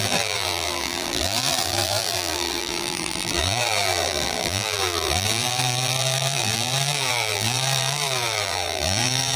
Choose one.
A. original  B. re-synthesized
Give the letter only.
B